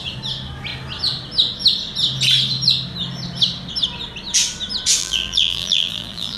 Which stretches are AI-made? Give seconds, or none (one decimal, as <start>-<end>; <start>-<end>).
5.0-6.4